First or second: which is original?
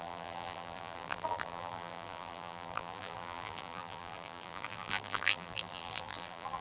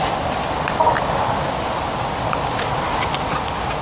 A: second